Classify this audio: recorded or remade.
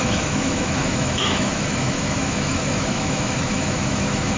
remade